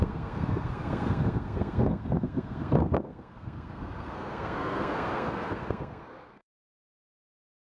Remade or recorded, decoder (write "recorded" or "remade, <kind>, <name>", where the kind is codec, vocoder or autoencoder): remade, codec, SNAC